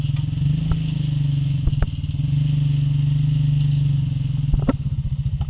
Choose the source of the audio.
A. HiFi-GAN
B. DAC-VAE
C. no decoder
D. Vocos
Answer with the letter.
C